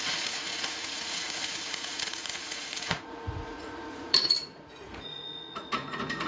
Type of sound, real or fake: fake